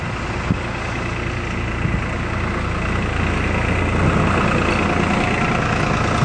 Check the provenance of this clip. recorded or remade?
recorded